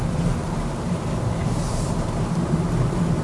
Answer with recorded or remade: remade